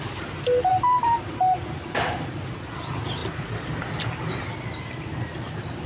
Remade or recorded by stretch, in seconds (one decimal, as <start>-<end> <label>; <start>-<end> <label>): 0.0-0.7 recorded; 0.7-2.0 remade; 2.0-5.9 recorded

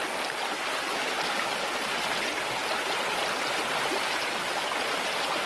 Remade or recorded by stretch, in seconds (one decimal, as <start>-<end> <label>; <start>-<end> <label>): 0.0-5.5 recorded